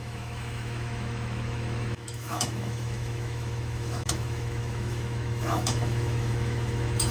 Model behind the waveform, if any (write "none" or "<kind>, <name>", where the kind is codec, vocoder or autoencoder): autoencoder, DAC-VAE